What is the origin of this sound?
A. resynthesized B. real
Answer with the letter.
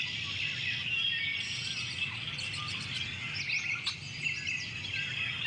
B